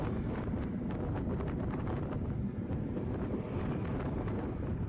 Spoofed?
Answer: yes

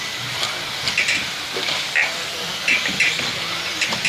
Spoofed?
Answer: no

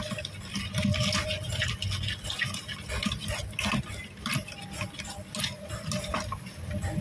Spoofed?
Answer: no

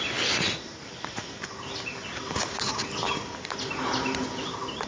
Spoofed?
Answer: no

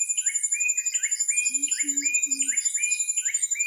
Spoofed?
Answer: no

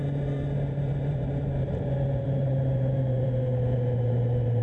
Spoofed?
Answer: yes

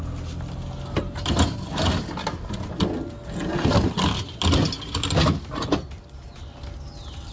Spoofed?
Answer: no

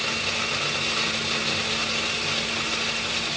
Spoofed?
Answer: no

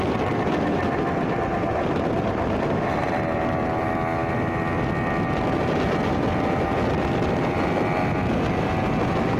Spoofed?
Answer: no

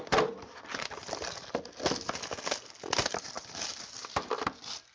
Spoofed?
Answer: no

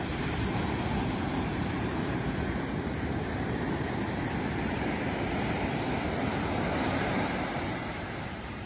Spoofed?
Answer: yes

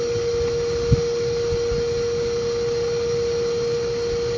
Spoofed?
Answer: no